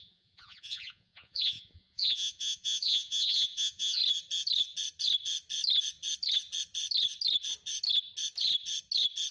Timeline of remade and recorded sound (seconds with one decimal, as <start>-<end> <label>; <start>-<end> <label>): 0.0-4.0 remade; 4.0-9.3 recorded